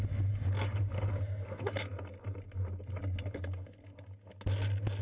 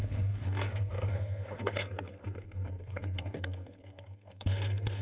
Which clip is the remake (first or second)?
second